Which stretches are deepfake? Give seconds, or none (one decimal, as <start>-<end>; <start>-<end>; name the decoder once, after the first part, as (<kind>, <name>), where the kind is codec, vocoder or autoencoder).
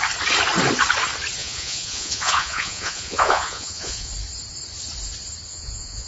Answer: 1.4-4.1 (vocoder, Vocos); 5.5-6.1